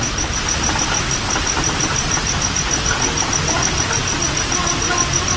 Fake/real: real